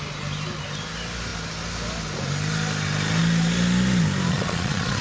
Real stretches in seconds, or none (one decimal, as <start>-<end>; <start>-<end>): 0.0-4.3